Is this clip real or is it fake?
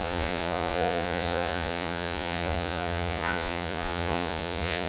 fake